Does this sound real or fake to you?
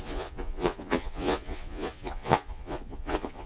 fake